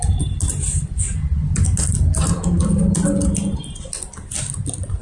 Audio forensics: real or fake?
real